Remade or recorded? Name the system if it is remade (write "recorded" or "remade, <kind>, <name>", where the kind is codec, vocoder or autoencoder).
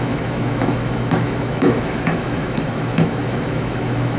remade, autoencoder, DAC-VAE